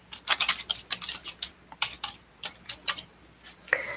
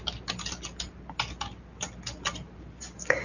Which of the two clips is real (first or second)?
second